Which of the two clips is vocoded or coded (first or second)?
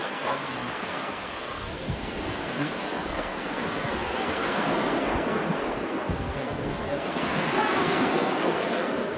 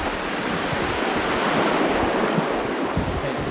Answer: first